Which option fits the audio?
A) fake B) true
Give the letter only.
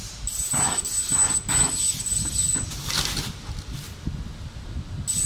B